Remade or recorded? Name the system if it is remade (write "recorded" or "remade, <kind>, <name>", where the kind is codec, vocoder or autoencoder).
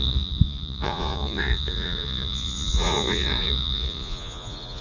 remade, vocoder, Vocos